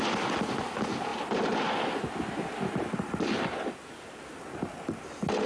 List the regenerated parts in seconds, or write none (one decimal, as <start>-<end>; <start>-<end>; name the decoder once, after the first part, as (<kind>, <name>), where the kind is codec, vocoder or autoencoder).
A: none